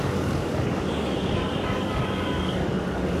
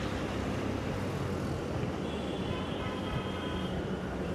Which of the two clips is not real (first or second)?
first